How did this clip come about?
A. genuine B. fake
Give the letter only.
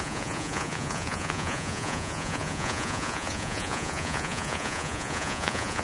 B